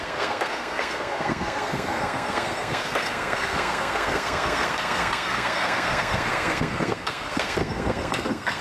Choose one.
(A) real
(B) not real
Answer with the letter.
B